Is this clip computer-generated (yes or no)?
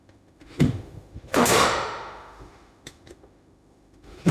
yes